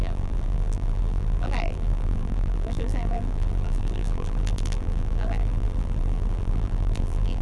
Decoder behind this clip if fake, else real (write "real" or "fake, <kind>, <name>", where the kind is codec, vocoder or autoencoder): fake, vocoder, BigVGAN v2